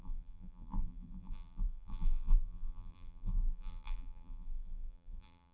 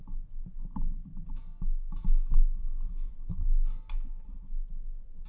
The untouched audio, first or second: second